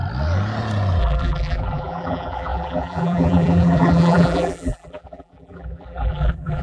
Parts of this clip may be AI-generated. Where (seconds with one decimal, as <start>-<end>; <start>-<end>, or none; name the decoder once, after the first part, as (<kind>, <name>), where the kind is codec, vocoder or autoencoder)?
1.0-6.6 (vocoder, BigVGAN v2)